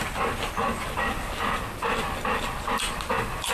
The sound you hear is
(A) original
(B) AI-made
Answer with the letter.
A